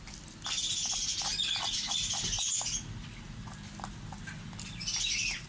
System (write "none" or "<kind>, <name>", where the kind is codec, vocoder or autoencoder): none